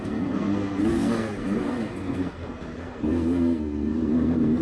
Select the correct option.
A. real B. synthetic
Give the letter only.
B